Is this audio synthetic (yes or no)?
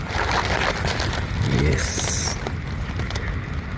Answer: no